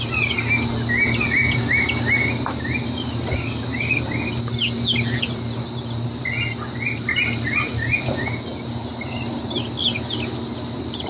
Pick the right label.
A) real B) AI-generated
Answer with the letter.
A